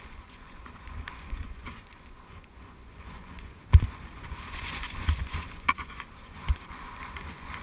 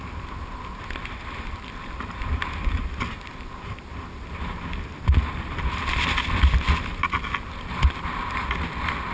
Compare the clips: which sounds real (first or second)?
second